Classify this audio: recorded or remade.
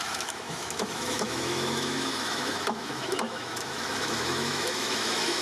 remade